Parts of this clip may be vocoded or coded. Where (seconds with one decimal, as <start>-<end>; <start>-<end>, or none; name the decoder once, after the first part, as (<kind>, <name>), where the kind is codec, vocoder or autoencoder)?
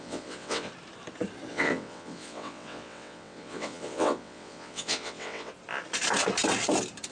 0.0-0.7 (vocoder, WaveNeXt); 1.5-5.5